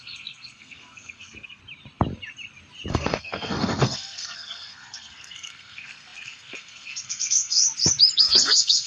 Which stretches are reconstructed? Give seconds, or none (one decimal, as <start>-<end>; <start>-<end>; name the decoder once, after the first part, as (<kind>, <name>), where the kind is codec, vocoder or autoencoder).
0.0-1.6 (codec, SNAC); 2.9-7.6; 8.2-8.9